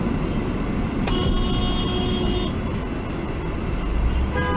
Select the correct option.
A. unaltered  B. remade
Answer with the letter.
A